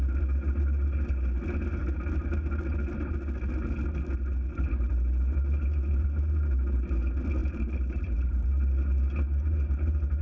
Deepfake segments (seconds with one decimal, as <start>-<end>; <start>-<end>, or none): 7.4-8.5